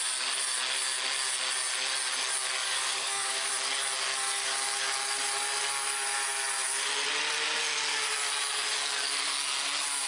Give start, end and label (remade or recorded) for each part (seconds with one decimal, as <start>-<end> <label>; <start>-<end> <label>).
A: 0.0-2.6 recorded; 2.6-3.5 remade; 3.5-10.1 recorded